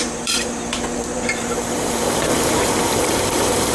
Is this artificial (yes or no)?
yes